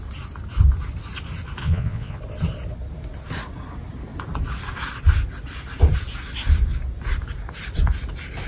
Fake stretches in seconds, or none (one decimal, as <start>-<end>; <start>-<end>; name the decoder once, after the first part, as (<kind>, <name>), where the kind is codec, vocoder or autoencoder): 1.6-2.2 (vocoder, Vocos)